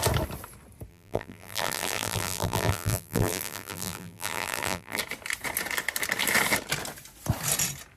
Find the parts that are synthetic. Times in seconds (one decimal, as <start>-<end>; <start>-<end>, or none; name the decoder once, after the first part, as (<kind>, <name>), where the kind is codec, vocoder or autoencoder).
0.9-5.0 (vocoder, BigVGAN v2)